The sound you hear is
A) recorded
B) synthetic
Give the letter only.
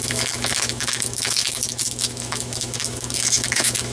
B